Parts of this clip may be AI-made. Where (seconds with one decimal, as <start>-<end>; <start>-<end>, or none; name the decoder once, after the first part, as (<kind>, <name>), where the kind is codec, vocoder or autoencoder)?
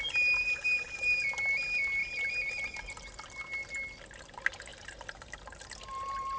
4.7-5.4 (vocoder, BigVGAN v2)